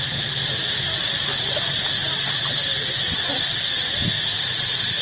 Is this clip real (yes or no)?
yes